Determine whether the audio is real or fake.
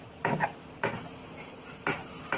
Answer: real